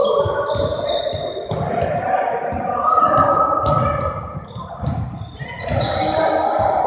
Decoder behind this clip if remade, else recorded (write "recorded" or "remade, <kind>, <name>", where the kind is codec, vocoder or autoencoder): recorded